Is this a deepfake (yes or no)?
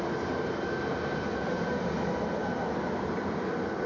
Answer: no